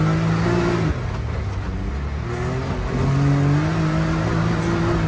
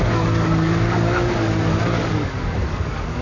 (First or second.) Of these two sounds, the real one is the first